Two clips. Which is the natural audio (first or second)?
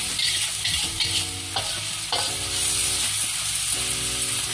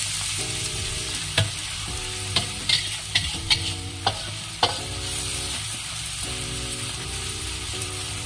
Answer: first